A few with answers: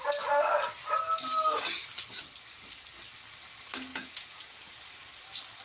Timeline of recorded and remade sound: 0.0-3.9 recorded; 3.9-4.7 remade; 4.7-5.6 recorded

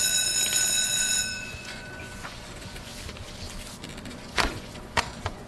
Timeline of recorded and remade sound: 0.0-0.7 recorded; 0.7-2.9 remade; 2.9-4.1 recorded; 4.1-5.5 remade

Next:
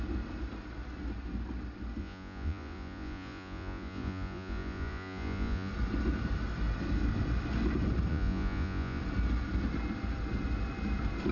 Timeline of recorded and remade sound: 0.0-2.0 recorded; 2.0-5.7 remade; 5.7-8.1 recorded; 8.1-9.0 remade; 9.0-11.3 recorded